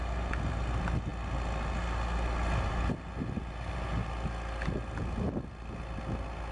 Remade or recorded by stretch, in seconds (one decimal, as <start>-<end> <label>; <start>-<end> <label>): 0.0-6.5 recorded